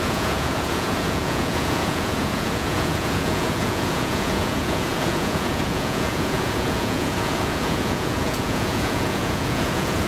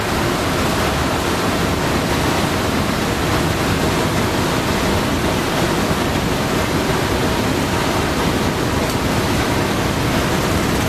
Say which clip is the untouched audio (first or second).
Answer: second